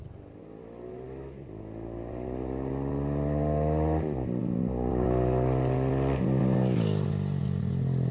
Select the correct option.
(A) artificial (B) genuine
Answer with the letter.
B